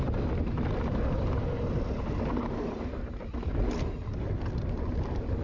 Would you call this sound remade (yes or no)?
no